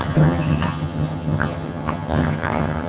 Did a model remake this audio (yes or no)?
yes